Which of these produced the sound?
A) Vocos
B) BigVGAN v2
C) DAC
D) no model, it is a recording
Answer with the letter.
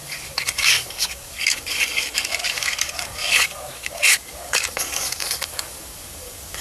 C